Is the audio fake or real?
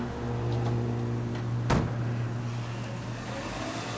real